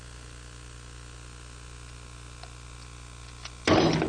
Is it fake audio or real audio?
real